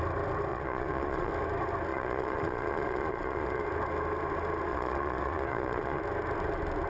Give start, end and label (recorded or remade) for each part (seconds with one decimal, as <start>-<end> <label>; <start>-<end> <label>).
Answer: 0.0-0.5 recorded; 0.5-1.3 remade; 1.3-1.9 recorded; 1.9-3.6 remade; 3.6-4.7 recorded; 4.7-6.0 remade; 6.0-6.9 recorded